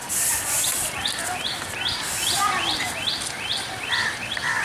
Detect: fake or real real